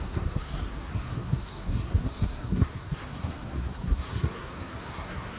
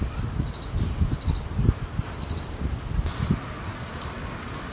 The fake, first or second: first